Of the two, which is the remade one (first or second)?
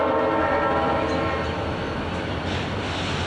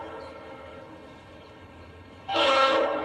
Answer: second